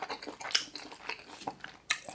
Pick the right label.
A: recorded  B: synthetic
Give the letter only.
A